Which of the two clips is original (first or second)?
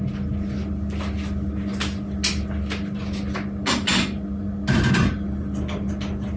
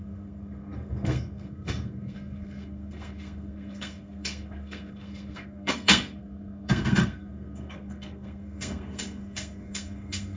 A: first